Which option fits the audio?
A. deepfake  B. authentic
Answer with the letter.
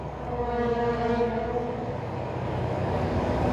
A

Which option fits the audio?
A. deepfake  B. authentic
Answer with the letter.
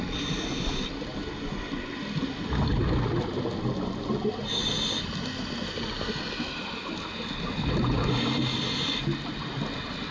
B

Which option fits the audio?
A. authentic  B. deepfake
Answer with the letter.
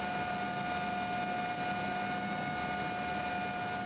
A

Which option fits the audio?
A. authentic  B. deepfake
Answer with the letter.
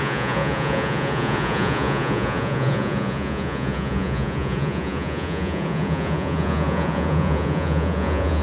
B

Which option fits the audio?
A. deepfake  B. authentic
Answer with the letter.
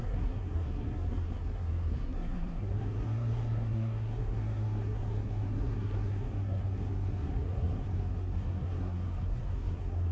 A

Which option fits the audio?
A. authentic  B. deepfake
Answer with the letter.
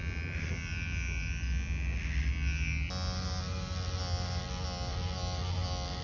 A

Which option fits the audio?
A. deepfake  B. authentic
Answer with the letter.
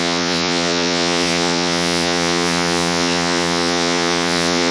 A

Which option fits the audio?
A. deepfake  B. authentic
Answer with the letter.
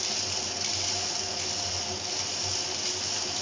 B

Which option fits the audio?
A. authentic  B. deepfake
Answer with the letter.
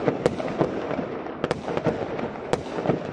A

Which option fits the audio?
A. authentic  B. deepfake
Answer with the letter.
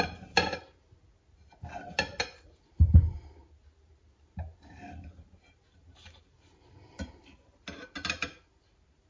A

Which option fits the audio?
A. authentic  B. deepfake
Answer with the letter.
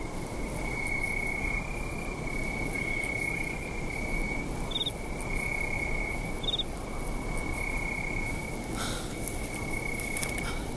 A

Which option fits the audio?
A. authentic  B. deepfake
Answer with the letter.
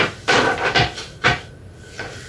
A